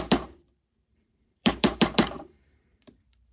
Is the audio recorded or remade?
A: remade